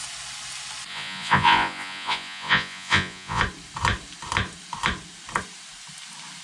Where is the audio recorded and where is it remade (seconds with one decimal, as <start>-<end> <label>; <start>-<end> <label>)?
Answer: 0.0-0.9 recorded; 0.9-3.4 remade; 3.4-6.4 recorded